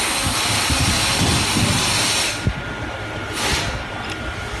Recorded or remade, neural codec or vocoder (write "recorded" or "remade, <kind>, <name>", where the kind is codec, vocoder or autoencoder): recorded